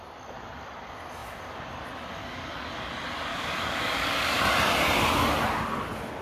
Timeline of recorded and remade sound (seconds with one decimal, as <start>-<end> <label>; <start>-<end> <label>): 0.0-2.2 recorded; 2.2-2.9 remade; 2.9-3.3 recorded; 3.3-4.4 remade; 4.4-6.2 recorded